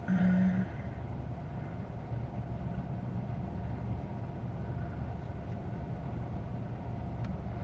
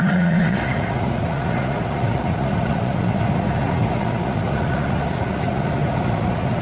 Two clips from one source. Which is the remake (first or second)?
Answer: second